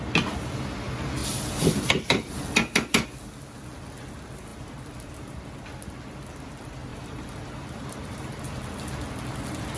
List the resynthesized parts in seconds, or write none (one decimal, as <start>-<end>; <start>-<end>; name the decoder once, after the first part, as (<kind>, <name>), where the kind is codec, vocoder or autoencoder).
1.2-2.4 (vocoder, BigVGAN v2); 4.5-5.4; 6.9-8.4